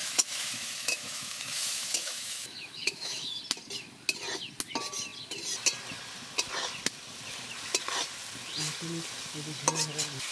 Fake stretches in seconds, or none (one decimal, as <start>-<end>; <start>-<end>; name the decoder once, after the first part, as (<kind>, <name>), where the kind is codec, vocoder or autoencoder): 0.0-3.4 (autoencoder, DAC-VAE)

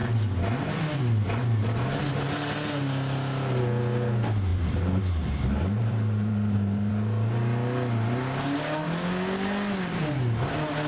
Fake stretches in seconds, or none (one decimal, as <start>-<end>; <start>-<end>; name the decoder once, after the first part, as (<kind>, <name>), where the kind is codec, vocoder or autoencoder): 4.5-6.9 (vocoder, BigVGAN v2)

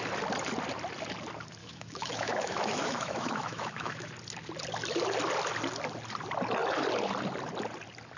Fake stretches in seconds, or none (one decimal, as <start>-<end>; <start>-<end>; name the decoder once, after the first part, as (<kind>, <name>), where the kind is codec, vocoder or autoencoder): 1.6-4.1 (autoencoder, DAC-VAE)

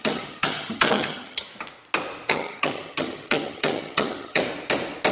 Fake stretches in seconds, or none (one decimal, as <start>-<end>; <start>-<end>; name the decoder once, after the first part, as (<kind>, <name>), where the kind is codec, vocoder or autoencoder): 0.0-1.5 (vocoder, HiFi-GAN); 2.3-4.4

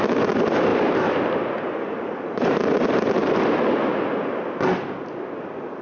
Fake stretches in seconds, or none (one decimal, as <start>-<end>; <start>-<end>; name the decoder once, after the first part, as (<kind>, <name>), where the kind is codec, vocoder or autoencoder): 0.7-2.5 (vocoder, BigVGAN v2); 3.2-4.1